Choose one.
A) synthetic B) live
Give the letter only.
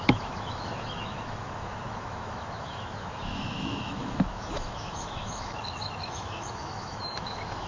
A